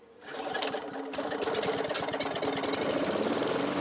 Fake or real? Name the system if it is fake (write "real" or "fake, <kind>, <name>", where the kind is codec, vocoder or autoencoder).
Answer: real